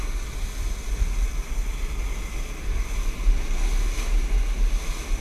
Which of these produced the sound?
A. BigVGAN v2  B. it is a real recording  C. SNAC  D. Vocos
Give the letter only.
B